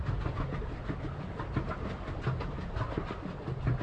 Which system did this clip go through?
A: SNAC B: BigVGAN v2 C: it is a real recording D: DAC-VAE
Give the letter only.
C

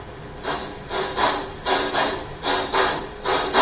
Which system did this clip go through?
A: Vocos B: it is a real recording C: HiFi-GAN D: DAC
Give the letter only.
B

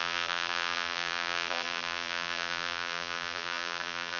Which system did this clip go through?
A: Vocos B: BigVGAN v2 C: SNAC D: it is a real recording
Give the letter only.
B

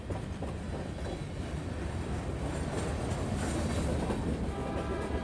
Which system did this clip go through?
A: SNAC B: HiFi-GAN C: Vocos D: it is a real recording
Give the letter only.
D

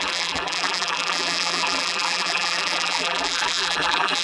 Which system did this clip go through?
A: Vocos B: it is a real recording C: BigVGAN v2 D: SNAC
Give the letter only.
C